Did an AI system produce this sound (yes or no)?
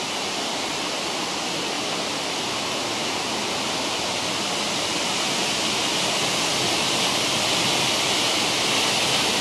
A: no